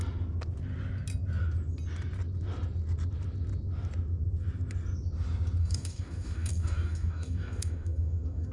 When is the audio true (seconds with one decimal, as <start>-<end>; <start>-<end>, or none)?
0.0-5.6